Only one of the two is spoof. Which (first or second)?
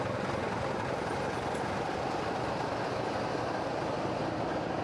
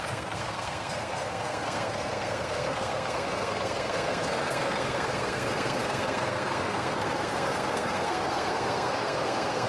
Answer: second